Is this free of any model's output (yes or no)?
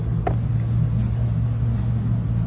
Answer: yes